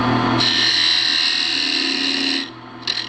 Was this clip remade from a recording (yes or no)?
no